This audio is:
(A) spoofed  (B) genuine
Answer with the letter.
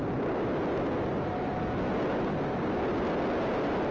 B